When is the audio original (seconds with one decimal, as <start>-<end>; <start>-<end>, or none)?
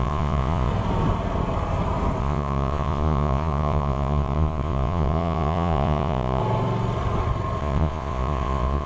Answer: 0.7-2.2; 6.4-7.6